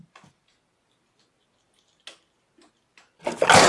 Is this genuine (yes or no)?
yes